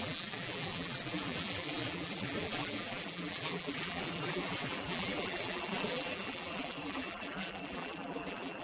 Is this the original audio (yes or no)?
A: no